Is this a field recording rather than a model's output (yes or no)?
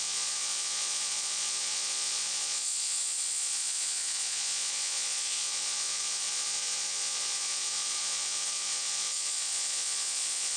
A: no